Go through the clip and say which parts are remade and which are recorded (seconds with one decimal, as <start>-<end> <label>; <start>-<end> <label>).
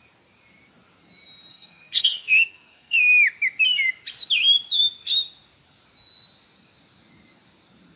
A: 0.0-1.5 recorded; 1.5-3.0 remade; 3.0-8.0 recorded